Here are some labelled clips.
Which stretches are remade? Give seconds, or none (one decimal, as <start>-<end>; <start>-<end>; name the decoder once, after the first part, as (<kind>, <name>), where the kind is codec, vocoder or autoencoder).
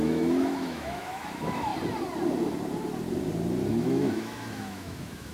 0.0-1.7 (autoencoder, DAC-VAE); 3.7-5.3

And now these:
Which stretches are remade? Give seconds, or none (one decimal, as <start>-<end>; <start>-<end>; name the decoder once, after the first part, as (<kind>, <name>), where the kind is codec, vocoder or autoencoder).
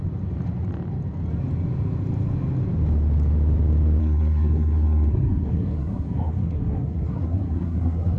4.0-8.2 (codec, SNAC)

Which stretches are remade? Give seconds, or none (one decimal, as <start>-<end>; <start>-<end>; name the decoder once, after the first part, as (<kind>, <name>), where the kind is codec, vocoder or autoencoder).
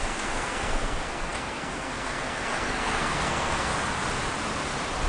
0.0-3.7 (codec, SNAC)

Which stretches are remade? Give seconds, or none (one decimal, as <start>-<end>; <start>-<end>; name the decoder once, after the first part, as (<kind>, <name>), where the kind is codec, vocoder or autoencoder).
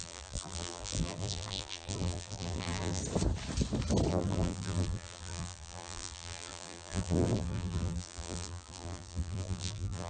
0.0-3.0 (vocoder, BigVGAN v2); 4.1-10.1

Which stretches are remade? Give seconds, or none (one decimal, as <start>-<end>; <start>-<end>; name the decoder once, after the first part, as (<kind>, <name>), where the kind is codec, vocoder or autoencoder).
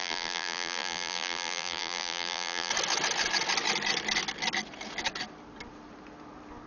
0.0-2.7 (vocoder, BigVGAN v2)